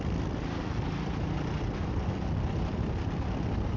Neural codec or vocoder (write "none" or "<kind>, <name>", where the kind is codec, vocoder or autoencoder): none